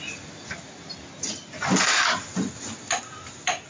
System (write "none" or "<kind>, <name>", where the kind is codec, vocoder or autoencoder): none